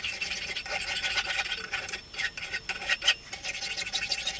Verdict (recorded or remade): remade